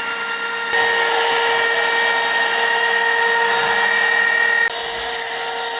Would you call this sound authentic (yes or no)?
yes